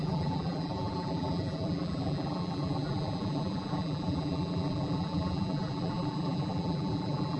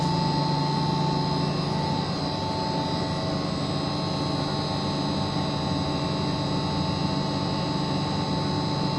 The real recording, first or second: second